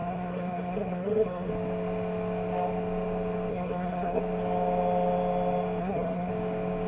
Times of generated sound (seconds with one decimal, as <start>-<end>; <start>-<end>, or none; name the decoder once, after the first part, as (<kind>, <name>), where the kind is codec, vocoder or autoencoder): 0.0-1.5 (codec, SNAC); 3.5-4.2; 5.8-6.3